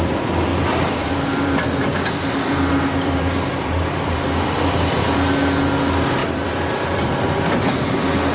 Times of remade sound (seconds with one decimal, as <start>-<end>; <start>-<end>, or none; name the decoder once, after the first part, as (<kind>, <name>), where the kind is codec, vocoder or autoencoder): 0.5-5.0 (vocoder, BigVGAN v2); 6.2-7.6